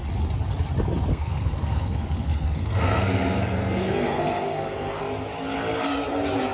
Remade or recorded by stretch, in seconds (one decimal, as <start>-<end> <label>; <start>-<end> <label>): 0.0-1.1 recorded; 1.1-5.0 remade; 5.0-6.5 recorded